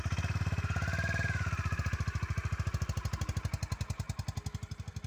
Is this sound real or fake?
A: real